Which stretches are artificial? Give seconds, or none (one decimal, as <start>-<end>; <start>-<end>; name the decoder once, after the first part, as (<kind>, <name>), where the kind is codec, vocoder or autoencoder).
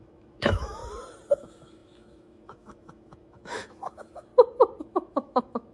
0.0-0.8 (autoencoder, DAC-VAE); 1.4-4.3; 4.8-5.7